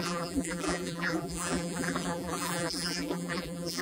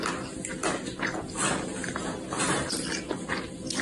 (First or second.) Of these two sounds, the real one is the second